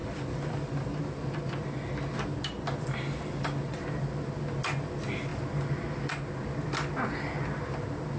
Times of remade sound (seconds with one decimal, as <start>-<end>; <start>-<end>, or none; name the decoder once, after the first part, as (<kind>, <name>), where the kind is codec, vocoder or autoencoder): 0.0-1.0 (vocoder, BigVGAN v2); 2.5-3.8